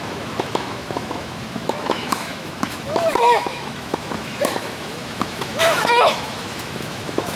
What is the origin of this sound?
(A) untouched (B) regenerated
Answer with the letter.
B